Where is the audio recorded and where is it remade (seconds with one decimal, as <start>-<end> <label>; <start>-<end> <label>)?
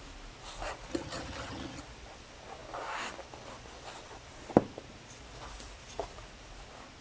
0.0-0.9 recorded; 0.9-1.8 remade; 1.8-7.0 recorded